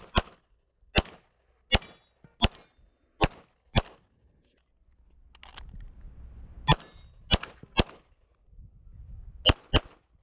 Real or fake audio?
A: real